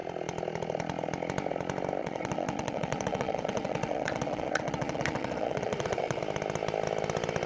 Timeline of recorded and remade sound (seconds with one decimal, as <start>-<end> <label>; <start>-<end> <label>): 0.0-2.0 recorded; 2.0-6.2 remade; 6.2-7.5 recorded